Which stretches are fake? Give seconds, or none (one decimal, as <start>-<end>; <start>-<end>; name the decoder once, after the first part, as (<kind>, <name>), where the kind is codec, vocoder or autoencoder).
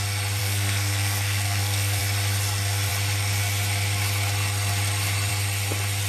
0.4-2.0 (codec, SNAC)